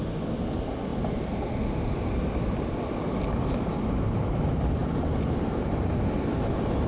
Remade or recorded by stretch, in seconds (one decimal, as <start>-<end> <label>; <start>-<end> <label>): 0.0-6.9 recorded